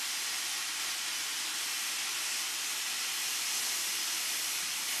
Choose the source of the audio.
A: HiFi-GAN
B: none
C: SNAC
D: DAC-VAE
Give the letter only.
B